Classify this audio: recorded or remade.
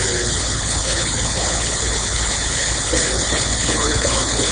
remade